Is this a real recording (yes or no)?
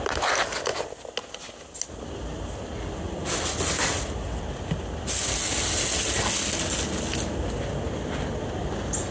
yes